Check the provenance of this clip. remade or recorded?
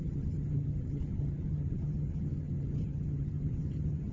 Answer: remade